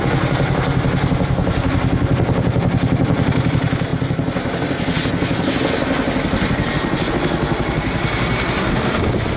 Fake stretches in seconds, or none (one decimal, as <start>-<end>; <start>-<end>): none